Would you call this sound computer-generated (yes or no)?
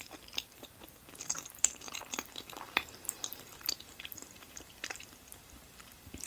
yes